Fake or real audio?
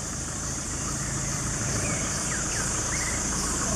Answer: fake